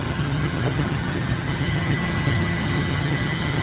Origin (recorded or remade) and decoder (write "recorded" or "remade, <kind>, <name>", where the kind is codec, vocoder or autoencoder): remade, vocoder, HiFi-GAN